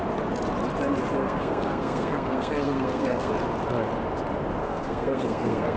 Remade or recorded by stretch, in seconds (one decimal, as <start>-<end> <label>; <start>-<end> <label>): 0.0-1.2 recorded; 1.2-3.3 remade; 3.3-4.6 recorded; 4.6-5.8 remade